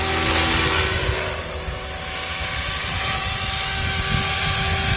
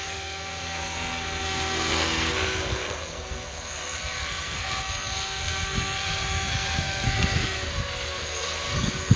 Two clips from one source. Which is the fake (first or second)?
second